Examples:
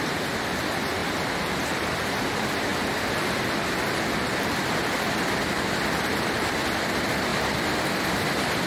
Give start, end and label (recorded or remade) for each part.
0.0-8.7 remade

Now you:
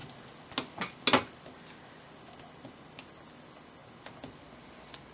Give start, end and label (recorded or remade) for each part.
0.0-5.1 recorded

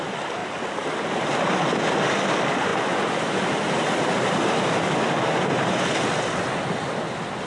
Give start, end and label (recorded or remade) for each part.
0.0-7.5 recorded

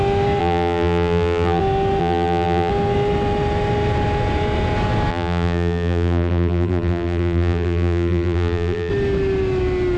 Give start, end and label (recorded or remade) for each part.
0.0-0.4 recorded; 0.4-1.6 remade; 1.6-2.0 recorded; 2.0-2.7 remade; 2.7-5.1 recorded; 5.1-8.9 remade; 8.9-10.0 recorded

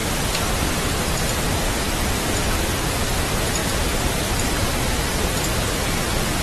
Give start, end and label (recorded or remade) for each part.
0.0-3.1 remade; 3.1-3.6 recorded; 3.6-4.7 remade; 4.7-6.4 recorded

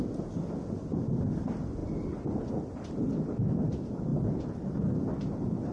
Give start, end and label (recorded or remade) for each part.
0.0-4.1 recorded; 4.1-4.8 remade; 4.8-5.7 recorded

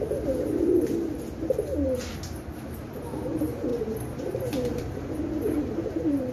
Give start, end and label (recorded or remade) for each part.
0.0-6.3 recorded